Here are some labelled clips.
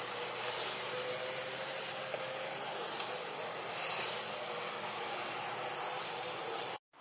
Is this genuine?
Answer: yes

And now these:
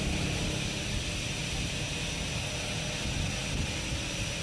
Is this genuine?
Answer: yes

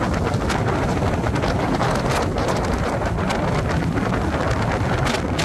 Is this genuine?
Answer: yes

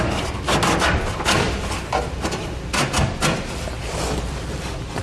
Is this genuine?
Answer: yes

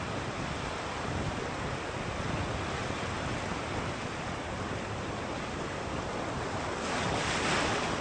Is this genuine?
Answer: yes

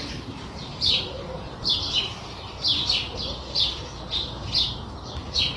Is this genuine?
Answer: no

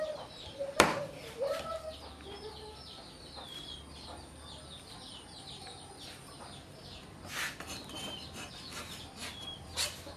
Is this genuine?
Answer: no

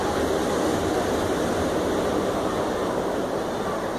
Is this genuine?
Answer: yes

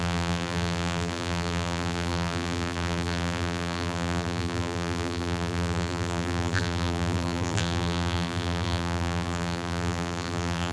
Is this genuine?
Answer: no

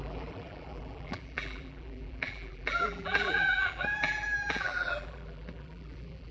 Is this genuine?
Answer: no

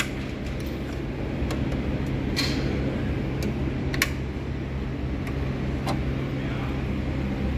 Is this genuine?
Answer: yes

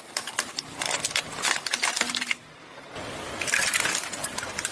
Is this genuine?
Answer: yes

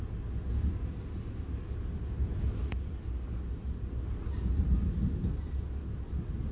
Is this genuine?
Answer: yes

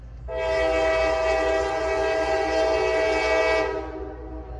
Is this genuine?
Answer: yes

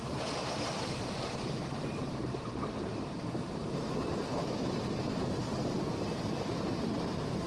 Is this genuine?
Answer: no